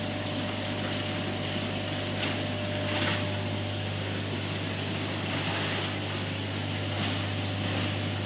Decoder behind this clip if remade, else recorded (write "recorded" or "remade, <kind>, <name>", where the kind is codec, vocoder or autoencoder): recorded